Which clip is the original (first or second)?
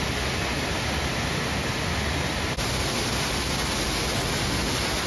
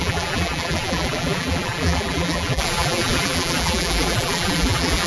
first